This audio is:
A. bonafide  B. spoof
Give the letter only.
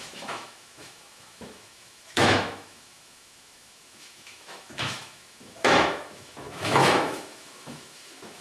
B